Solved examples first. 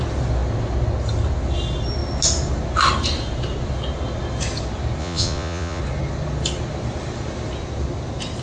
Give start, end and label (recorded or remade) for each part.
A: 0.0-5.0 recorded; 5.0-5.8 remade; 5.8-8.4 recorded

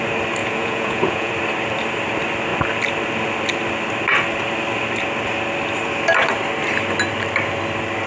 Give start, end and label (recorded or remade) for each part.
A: 0.0-0.4 recorded; 0.4-1.3 remade; 1.3-8.1 recorded

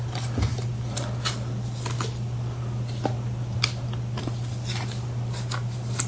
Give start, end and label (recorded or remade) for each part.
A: 0.0-6.1 recorded

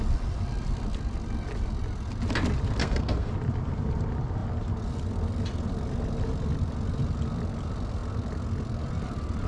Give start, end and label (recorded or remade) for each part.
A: 0.0-2.8 recorded; 2.8-3.3 remade; 3.3-9.5 recorded

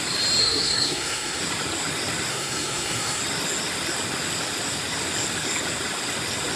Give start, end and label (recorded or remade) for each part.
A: 0.0-0.4 recorded; 0.4-1.4 remade; 1.4-2.3 recorded; 2.3-3.2 remade; 3.2-6.6 recorded

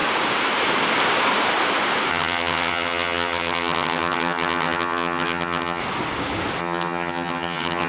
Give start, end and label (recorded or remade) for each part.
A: 0.0-2.1 recorded; 2.1-5.8 remade; 5.8-6.6 recorded; 6.6-7.9 remade

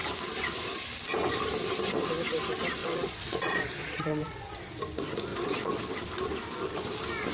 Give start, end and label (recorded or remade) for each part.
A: 0.0-2.8 recorded; 2.8-4.8 remade; 4.8-5.3 recorded; 5.3-5.8 remade; 5.8-7.3 recorded

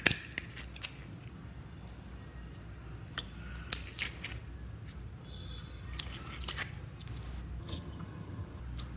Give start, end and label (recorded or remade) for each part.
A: 0.0-7.6 recorded; 7.6-8.6 remade; 8.6-9.0 recorded